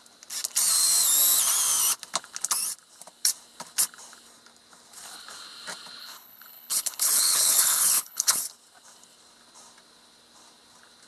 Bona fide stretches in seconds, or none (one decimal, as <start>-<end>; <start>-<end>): 0.0-6.0; 8.4-11.1

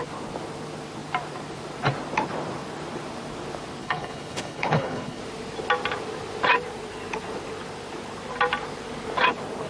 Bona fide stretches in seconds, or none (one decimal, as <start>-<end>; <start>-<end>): 0.0-3.8; 5.2-9.7

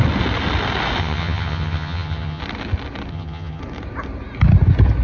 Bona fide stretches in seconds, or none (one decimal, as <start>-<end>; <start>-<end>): 0.0-1.0; 2.4-3.1; 3.6-5.0

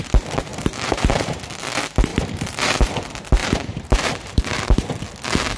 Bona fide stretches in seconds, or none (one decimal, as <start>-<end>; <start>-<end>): 0.0-0.5; 1.4-2.1; 2.9-3.4; 4.4-5.6

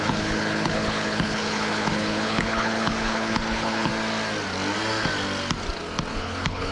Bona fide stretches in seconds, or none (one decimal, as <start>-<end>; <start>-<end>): 3.9-6.1

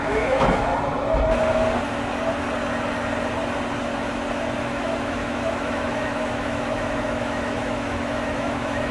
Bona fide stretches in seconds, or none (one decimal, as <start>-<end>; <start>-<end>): 0.7-4.6

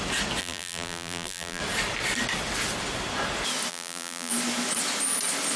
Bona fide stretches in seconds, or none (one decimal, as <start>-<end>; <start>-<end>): 0.0-0.4; 1.6-3.7; 4.3-5.6

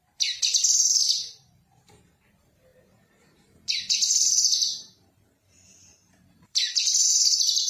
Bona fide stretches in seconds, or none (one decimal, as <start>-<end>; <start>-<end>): 0.0-1.4